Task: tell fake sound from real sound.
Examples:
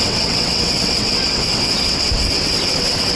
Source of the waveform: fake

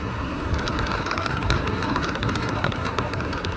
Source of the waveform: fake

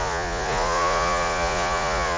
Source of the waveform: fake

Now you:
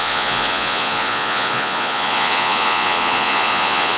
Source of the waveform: fake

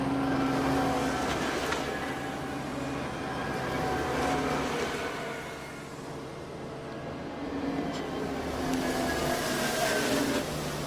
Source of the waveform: real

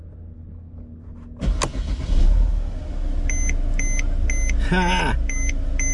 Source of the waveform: real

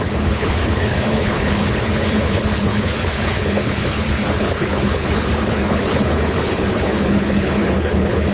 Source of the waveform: fake